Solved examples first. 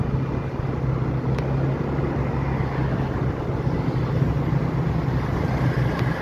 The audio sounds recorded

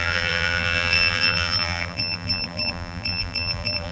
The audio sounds remade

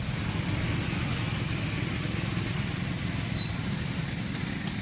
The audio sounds recorded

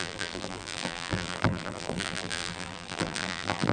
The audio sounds remade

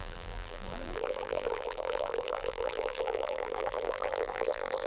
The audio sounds remade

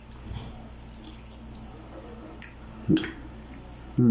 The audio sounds recorded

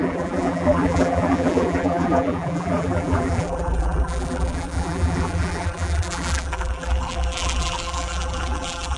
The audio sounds remade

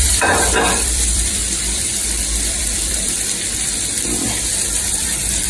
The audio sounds remade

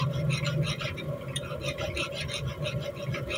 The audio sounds recorded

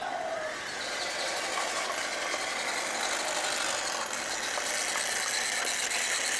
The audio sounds recorded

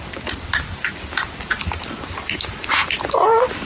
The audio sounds recorded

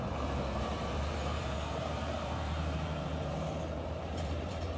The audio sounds remade